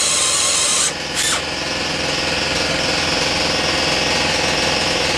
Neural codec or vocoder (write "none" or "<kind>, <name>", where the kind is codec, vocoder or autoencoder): none